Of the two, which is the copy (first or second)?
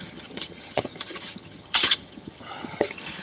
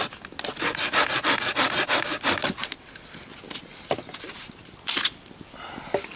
first